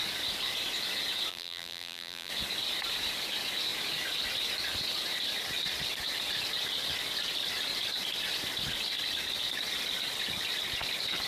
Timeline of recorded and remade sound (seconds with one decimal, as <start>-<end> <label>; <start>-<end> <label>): 0.0-1.3 recorded; 1.3-2.3 remade; 2.3-11.3 recorded